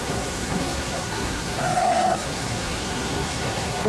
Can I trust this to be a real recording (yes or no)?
no